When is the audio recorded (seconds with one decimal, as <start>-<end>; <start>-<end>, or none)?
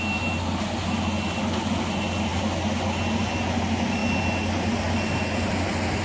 0.0-6.0